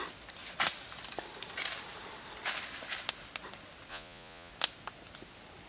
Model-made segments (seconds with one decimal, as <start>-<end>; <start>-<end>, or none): 3.9-4.5